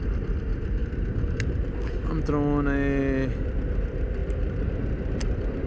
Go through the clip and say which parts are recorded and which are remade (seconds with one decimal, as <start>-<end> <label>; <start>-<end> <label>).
0.0-5.7 recorded